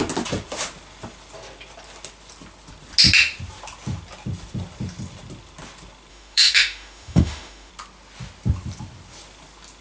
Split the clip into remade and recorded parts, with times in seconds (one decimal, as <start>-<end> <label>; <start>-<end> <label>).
0.0-6.1 recorded; 6.1-7.7 remade; 7.7-9.8 recorded